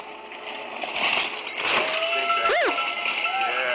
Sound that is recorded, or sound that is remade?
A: recorded